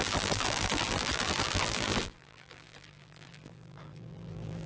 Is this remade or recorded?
remade